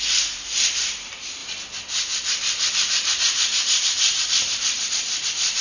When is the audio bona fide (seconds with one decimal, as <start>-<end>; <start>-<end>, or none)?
1.4-2.0